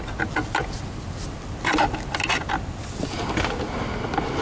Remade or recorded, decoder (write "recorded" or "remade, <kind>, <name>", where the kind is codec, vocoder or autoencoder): recorded